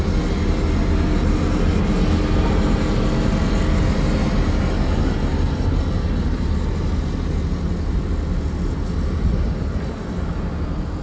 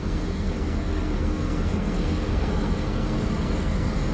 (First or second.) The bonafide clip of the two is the first